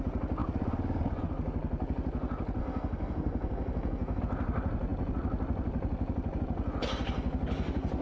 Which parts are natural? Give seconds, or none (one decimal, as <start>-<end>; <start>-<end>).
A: 0.0-2.6; 4.2-8.0